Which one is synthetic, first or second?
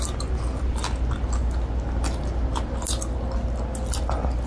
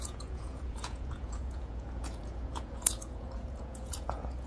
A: second